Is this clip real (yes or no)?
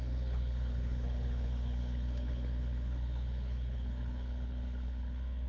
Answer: no